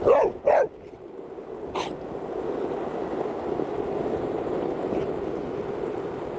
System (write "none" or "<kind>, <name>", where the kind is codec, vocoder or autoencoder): none